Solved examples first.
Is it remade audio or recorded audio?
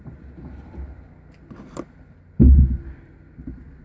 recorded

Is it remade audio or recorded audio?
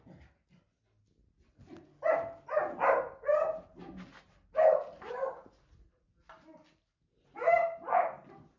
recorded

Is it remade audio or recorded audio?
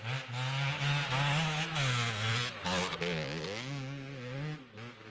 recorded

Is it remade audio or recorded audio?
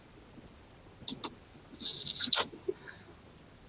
recorded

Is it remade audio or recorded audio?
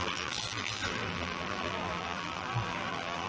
remade